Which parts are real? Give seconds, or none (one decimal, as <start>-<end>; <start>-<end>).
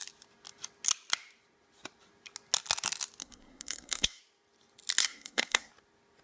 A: 0.0-3.2; 4.2-5.0; 5.7-6.2